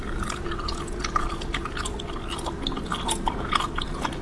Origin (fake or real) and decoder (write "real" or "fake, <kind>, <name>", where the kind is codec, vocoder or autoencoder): real